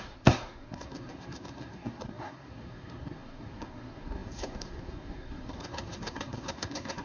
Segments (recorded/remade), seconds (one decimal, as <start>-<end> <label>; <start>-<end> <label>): 0.0-7.0 remade